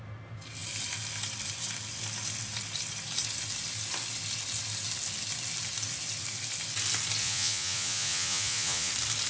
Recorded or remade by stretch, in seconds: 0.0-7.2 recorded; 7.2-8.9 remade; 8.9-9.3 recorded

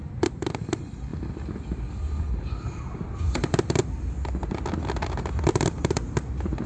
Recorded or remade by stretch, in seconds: 0.0-6.7 recorded